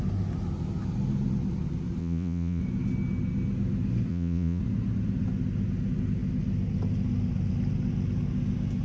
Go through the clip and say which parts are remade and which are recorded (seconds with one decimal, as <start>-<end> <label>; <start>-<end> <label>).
0.0-2.0 recorded; 2.0-2.6 remade; 2.6-4.1 recorded; 4.1-4.6 remade; 4.6-8.8 recorded